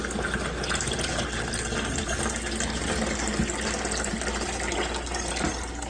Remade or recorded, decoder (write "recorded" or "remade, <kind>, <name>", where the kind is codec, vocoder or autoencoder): recorded